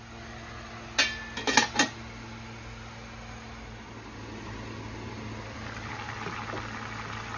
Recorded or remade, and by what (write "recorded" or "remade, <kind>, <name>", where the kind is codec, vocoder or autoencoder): recorded